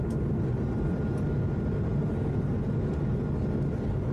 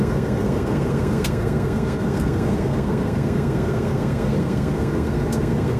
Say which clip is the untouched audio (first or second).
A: first